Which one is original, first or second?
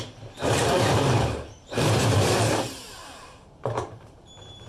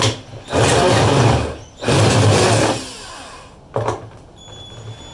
second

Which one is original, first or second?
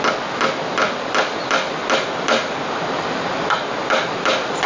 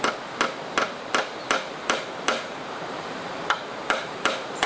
first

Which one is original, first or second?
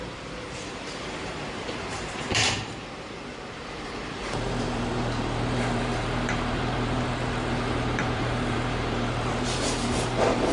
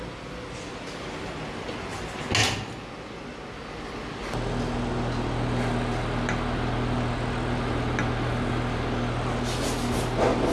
second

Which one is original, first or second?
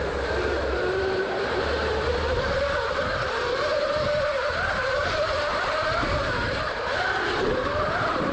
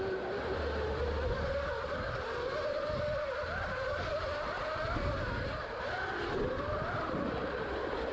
second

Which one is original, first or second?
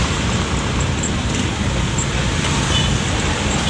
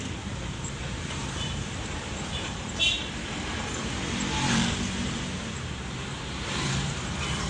first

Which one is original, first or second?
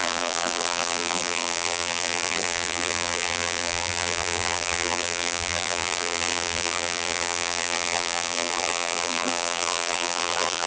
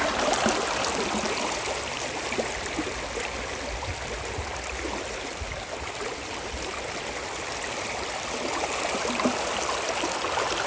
second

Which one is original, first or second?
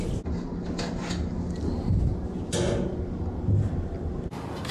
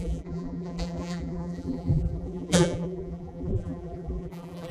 first